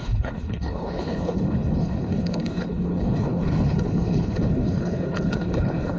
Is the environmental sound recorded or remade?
remade